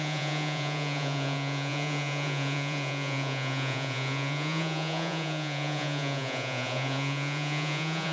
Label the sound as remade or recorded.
remade